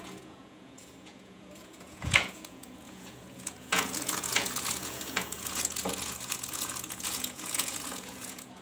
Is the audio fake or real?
fake